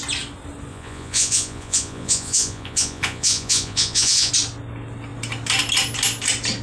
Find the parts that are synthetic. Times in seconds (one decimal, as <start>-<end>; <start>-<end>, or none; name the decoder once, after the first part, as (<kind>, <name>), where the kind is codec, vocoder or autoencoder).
0.7-4.3 (vocoder, Vocos)

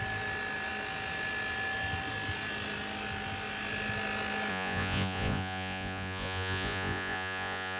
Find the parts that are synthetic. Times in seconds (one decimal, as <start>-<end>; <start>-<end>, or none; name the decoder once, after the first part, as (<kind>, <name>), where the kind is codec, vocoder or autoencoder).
4.5-7.8 (vocoder, Vocos)

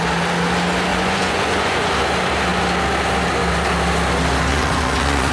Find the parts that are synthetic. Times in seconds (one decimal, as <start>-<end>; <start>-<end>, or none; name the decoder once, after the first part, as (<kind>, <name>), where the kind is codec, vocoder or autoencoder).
0.9-1.9 (vocoder, Vocos); 4.5-5.3

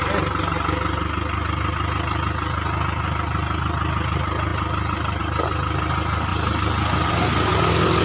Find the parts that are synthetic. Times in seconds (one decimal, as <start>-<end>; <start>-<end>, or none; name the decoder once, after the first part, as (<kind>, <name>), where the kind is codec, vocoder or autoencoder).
none

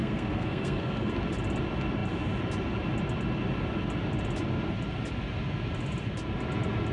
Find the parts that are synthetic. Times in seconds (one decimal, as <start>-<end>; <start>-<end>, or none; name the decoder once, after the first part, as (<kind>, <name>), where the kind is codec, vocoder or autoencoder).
0.0-1.1 (codec, SNAC)